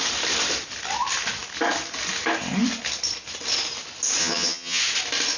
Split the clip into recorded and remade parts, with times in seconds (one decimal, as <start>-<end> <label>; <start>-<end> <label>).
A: 0.0-4.2 recorded; 4.2-4.8 remade; 4.8-5.4 recorded